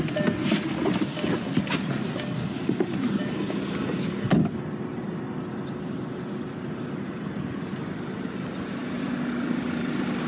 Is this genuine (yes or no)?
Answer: yes